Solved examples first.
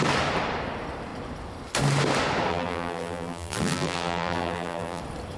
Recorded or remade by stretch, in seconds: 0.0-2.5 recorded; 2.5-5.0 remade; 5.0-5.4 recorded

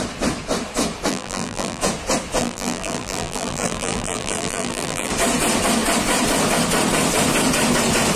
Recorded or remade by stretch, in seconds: 0.0-1.1 recorded; 1.1-1.8 remade; 1.8-2.4 recorded; 2.4-5.1 remade; 5.1-8.2 recorded